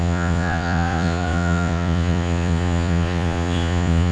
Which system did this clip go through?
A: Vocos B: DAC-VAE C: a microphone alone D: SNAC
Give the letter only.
A